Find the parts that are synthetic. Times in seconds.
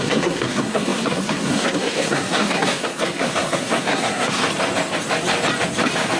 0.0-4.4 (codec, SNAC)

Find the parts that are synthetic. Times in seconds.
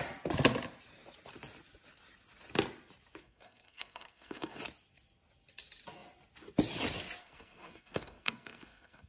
3.2-4.6 (codec, SNAC); 7.2-9.1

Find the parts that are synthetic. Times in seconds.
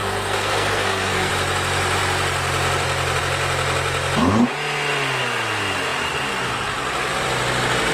0.0-1.3 (codec, SNAC)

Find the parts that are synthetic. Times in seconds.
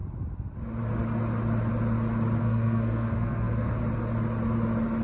2.4-3.7 (codec, SNAC)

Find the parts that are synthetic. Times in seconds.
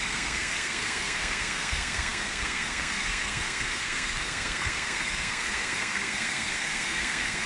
0.0-7.5 (codec, SNAC)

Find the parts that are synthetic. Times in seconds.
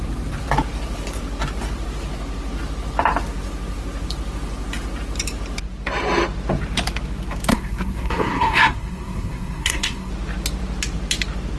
7.5-10.1 (codec, SNAC)